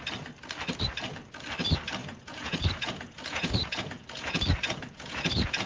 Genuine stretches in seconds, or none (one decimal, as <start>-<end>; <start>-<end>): 0.0-2.0